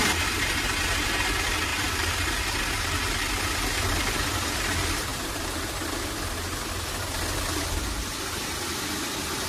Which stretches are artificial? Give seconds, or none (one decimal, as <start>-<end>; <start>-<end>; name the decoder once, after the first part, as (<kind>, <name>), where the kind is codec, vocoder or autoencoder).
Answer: 1.7-2.4 (vocoder, BigVGAN v2); 5.1-5.7